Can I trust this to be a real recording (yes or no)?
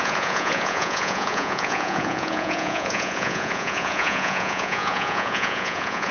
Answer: no